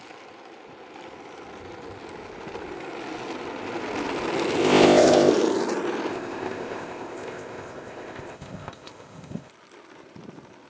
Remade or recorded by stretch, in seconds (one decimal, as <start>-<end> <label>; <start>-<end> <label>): 0.0-4.6 recorded; 4.6-5.3 remade; 5.3-6.1 recorded; 6.1-9.5 remade; 9.5-10.7 recorded